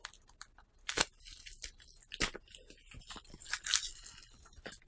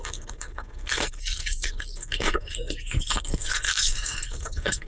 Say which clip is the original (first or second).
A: first